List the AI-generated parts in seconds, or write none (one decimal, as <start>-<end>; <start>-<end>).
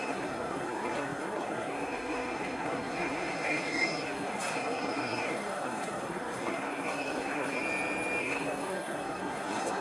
0.0-7.6; 8.2-9.8